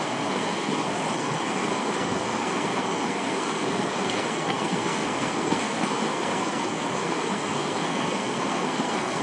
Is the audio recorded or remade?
remade